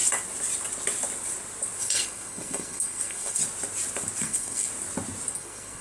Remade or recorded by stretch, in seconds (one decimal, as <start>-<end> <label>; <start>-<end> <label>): 0.0-1.8 recorded; 1.8-3.4 remade; 3.4-4.2 recorded; 4.2-4.7 remade; 4.7-5.3 recorded; 5.3-5.8 remade